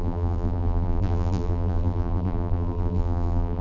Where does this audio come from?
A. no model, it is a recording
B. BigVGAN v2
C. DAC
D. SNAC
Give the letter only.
B